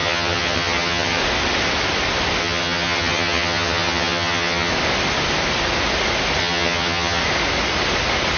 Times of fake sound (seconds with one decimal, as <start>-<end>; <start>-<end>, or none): 0.0-1.2; 2.4-4.7; 6.4-7.2